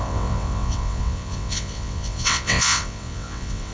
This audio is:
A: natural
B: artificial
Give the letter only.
B